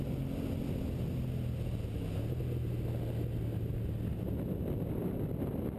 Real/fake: real